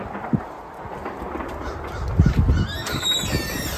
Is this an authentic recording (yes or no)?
yes